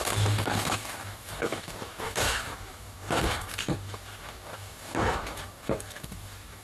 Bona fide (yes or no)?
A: no